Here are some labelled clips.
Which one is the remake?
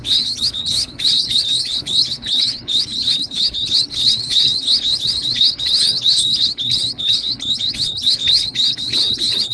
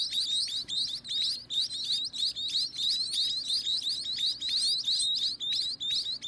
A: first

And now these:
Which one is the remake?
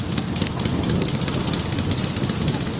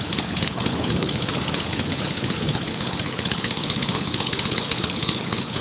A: second